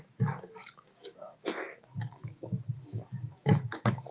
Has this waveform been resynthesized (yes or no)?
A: yes